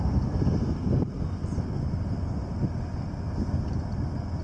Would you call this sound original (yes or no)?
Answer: yes